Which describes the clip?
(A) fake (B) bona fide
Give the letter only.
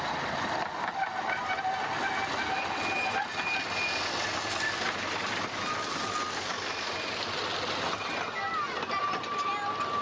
B